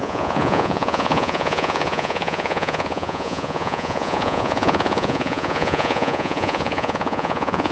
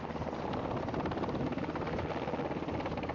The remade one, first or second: first